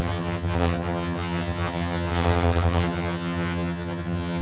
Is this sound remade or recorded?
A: remade